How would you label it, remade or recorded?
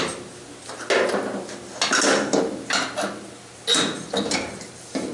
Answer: recorded